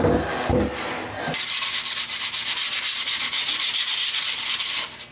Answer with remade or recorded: recorded